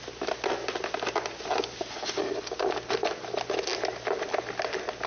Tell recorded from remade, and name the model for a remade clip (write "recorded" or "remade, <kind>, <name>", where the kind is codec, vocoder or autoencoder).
recorded